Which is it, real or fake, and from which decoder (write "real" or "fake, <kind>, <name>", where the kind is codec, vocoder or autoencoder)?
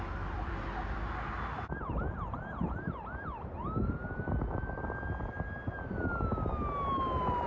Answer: real